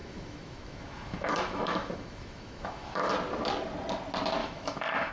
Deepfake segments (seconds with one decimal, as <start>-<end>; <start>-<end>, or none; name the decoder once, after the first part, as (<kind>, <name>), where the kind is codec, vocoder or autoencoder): 0.0-3.1 (autoencoder, DAC-VAE); 4.4-5.1